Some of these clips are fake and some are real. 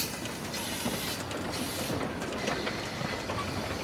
real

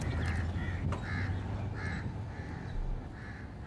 real